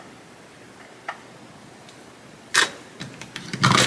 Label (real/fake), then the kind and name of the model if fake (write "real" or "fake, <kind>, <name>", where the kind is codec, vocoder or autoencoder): real